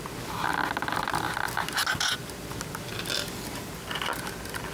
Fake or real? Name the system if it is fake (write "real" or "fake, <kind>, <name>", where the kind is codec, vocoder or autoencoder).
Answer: real